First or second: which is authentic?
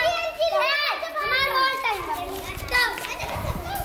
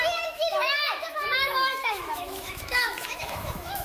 first